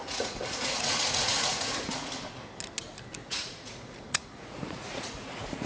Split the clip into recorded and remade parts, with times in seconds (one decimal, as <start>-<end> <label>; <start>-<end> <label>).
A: 0.0-2.1 remade; 2.1-3.2 recorded; 3.2-5.7 remade